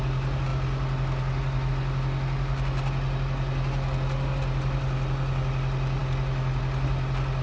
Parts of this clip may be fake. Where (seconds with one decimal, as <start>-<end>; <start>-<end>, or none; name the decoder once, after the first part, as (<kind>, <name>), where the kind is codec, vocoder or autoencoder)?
none